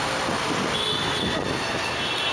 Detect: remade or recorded recorded